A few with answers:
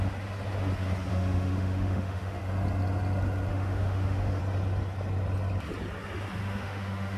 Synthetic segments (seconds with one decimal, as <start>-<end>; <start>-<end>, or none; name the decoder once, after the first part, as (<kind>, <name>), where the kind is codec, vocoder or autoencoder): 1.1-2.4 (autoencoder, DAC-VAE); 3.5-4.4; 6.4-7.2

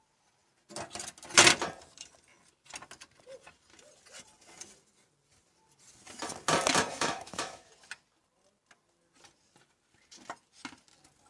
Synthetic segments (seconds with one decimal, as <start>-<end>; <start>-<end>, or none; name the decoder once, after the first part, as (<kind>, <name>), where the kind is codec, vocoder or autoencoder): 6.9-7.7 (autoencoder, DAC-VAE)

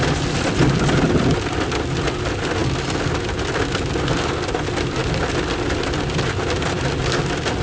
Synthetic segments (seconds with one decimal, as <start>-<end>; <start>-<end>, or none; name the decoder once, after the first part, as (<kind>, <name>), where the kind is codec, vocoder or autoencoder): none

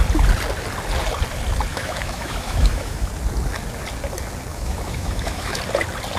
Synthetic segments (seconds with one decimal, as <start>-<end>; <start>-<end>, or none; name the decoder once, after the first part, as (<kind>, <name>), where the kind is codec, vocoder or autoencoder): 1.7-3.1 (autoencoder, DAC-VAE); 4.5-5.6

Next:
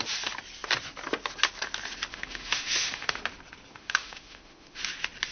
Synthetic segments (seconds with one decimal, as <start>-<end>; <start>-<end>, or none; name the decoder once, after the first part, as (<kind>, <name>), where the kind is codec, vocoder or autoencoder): 2.1-3.2 (autoencoder, DAC-VAE); 3.7-4.8